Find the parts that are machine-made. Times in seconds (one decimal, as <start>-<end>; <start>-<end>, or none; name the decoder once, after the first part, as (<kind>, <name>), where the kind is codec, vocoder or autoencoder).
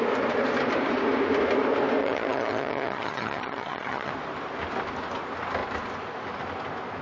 2.0-4.1 (vocoder, HiFi-GAN)